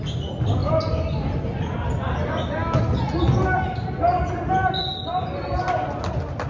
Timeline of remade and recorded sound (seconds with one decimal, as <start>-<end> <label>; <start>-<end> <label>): 0.0-6.5 recorded